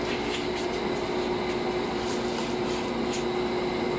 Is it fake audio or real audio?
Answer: real